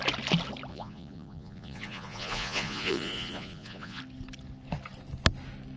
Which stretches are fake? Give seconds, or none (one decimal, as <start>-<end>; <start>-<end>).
0.7-4.0